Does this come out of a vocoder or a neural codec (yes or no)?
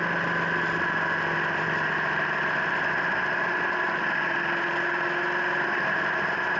no